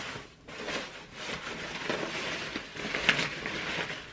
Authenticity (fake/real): real